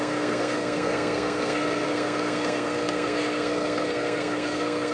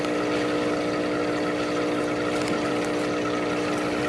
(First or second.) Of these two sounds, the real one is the second